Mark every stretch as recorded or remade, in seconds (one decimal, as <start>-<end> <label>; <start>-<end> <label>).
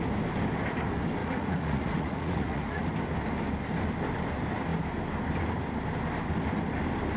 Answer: 0.0-1.2 recorded; 1.2-2.9 remade; 2.9-7.2 recorded